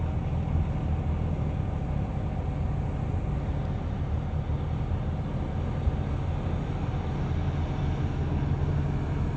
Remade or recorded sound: recorded